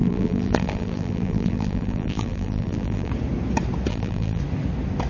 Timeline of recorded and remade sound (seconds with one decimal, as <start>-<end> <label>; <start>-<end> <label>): 0.0-3.1 remade; 3.1-3.9 recorded; 3.9-4.4 remade; 4.4-5.1 recorded